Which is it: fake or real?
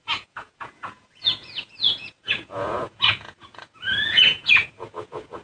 fake